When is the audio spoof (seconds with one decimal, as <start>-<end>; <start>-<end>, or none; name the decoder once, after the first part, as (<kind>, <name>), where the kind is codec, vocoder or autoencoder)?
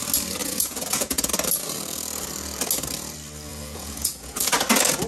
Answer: 0.4-1.3 (vocoder, Vocos); 3.5-4.5